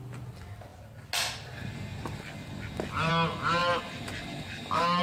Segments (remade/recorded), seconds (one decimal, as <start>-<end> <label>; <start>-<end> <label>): 0.0-5.0 recorded